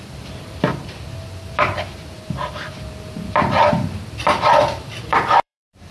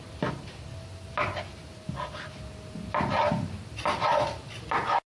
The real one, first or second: second